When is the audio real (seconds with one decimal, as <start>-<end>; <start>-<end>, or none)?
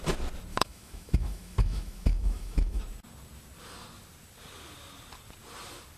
0.0-0.5; 2.8-6.0